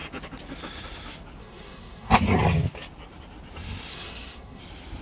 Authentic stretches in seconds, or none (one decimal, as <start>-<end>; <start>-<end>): 0.0-1.4; 2.2-3.9; 4.6-5.0